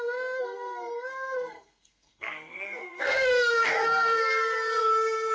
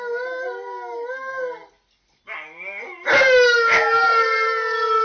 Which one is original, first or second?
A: second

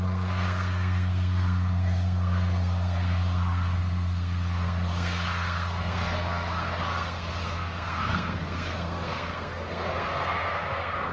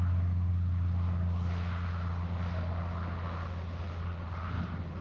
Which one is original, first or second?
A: second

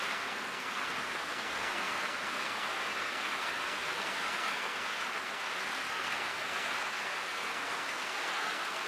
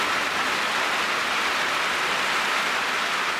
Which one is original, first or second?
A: second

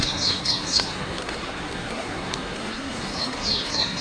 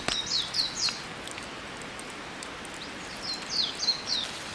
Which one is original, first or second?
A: second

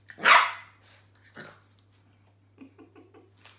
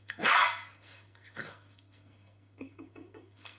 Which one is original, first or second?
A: first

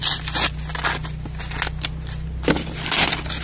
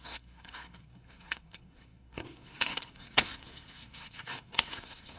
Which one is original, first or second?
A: first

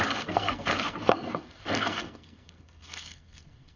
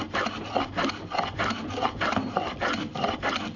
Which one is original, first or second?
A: second